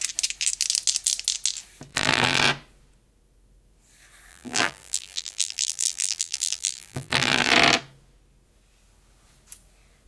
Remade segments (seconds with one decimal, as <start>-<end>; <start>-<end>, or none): 1.9-2.4; 4.3-7.5